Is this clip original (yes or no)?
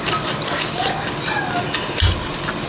yes